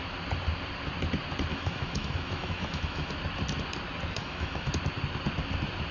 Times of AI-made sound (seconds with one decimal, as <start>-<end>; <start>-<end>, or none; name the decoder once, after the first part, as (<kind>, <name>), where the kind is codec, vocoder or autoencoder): 1.5-3.1 (autoencoder, DAC-VAE); 4.2-4.7